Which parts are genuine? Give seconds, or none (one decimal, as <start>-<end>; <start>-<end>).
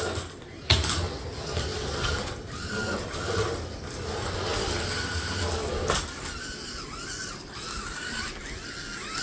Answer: 0.0-9.2